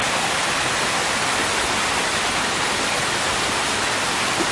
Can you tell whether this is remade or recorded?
recorded